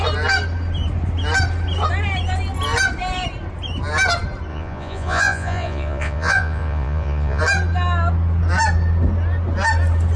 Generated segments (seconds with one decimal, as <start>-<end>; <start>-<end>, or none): 4.5-7.4

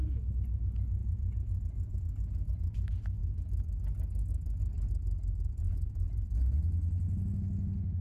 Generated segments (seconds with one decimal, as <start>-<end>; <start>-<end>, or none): 1.0-2.0; 5.6-6.4

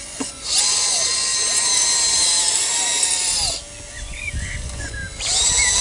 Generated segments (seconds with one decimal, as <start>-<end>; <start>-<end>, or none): 0.0-1.3; 3.9-5.0

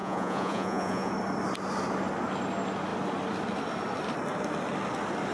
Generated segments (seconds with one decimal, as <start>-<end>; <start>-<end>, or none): 0.0-1.1

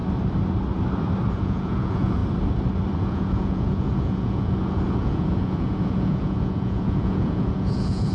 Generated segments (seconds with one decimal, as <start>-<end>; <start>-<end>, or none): 1.3-2.2; 3.0-8.1

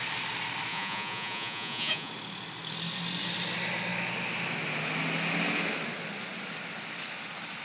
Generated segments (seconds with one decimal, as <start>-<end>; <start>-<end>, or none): 0.7-2.1

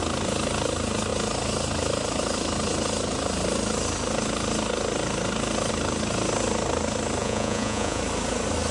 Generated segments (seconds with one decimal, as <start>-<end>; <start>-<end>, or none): 7.2-8.0